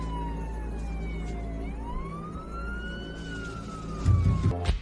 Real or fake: real